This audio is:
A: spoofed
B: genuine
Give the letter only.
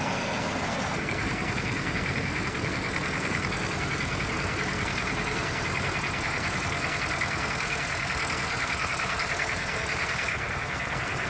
A